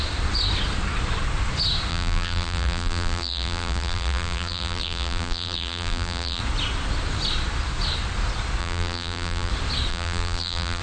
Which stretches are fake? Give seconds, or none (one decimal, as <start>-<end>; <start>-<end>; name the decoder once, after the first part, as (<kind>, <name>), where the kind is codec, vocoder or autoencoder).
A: 1.9-6.4 (vocoder, BigVGAN v2); 8.6-9.5; 9.9-10.8